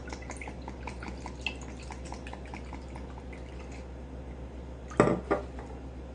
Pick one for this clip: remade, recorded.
recorded